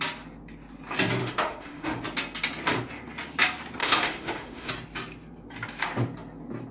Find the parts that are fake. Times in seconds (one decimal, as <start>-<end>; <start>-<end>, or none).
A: 1.2-2.0; 3.8-4.7